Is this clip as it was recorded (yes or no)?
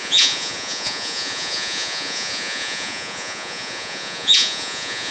no